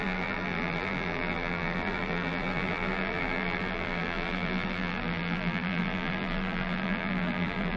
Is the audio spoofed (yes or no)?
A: yes